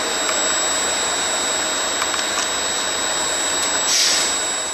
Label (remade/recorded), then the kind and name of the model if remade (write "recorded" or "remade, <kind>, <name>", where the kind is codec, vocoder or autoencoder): recorded